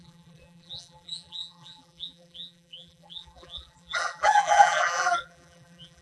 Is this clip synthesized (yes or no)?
yes